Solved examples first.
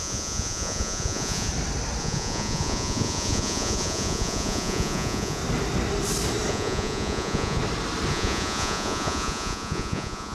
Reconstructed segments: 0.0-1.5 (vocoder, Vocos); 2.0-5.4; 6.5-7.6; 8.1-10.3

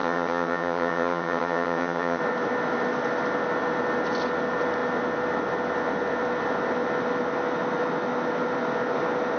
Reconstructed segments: 0.0-2.2 (vocoder, HiFi-GAN)

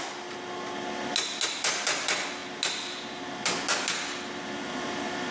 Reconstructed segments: none

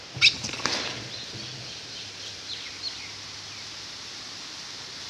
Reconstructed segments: none

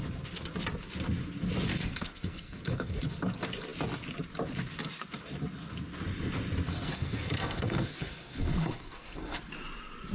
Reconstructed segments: 1.7-3.1 (codec, SNAC); 6.7-9.4

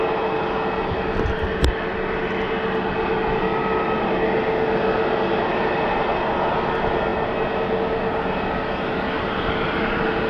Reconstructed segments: none